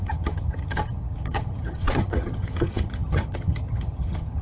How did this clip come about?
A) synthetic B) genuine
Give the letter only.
A